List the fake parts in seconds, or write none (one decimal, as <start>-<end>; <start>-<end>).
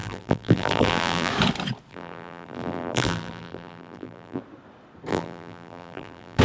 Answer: 0.0-1.3; 1.9-4.4; 5.1-6.4